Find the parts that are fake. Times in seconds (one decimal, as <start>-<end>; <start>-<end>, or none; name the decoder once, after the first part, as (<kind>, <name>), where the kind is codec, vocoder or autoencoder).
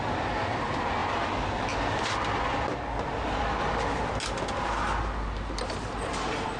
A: none